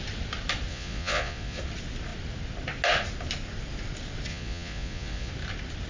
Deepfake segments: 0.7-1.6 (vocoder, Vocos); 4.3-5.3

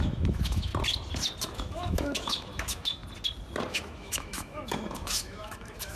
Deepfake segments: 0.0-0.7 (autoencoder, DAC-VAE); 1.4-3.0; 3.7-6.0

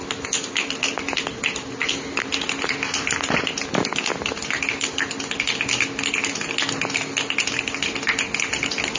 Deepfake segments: none

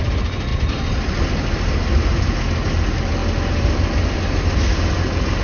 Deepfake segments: none

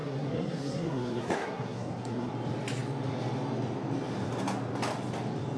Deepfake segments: 0.0-2.3 (codec, SNAC)